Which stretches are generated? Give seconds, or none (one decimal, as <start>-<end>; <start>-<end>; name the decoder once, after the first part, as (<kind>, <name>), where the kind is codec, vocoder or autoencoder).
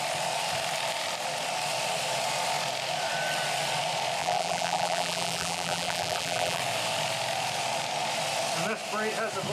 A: 4.2-6.6 (vocoder, BigVGAN v2)